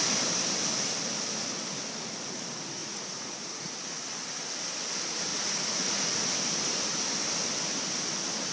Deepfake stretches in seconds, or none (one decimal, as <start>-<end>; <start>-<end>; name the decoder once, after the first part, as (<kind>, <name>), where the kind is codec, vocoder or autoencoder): 2.8-3.7 (vocoder, Vocos); 5.3-6.0